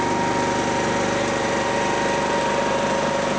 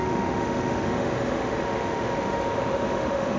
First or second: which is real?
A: first